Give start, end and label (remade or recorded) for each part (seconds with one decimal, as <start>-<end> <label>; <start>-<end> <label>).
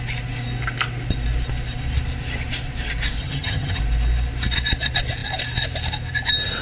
0.0-3.2 recorded; 3.2-3.8 remade; 3.8-6.6 recorded